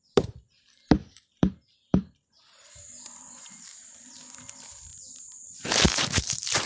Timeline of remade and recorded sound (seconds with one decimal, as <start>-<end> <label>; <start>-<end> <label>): 0.0-1.0 recorded; 1.0-4.1 remade; 4.1-4.9 recorded; 4.9-6.7 remade